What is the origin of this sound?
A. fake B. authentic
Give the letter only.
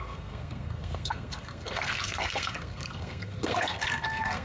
A